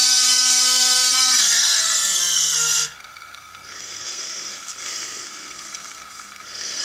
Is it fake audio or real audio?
fake